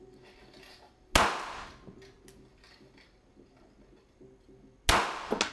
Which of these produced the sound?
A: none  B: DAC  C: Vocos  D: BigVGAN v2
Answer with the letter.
A